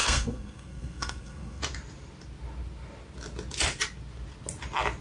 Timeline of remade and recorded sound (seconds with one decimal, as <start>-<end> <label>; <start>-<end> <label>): 0.0-1.6 remade; 1.6-5.0 recorded